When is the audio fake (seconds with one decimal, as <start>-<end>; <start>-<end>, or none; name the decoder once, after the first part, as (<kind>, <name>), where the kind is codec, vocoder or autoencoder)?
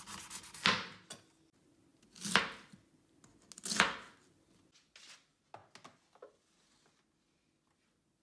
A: none